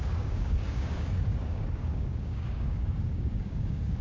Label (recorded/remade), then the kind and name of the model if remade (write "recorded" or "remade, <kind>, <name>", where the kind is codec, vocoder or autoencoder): remade, codec, DAC